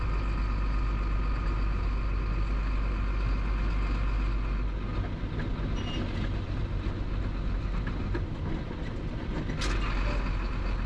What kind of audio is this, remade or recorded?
recorded